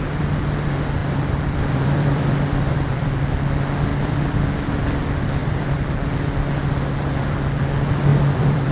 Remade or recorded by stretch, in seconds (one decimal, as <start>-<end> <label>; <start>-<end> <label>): 0.0-1.0 recorded; 1.0-3.1 remade; 3.1-3.9 recorded; 3.9-4.5 remade; 4.5-5.4 recorded; 5.4-6.5 remade; 6.5-8.1 recorded; 8.1-8.7 remade